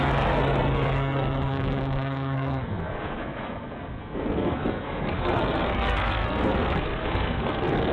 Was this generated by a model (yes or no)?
yes